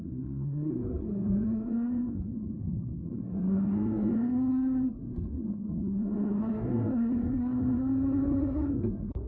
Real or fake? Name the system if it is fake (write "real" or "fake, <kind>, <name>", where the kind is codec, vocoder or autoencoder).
fake, codec, SNAC